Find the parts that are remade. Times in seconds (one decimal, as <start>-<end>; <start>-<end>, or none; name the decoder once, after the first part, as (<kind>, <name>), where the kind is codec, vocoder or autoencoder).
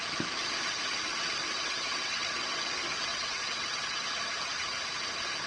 1.5-2.2 (vocoder, WaveNeXt); 3.1-4.0